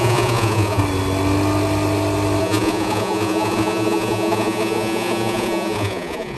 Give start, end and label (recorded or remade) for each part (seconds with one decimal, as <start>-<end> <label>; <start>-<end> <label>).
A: 0.0-0.8 remade; 0.8-2.4 recorded; 2.4-6.4 remade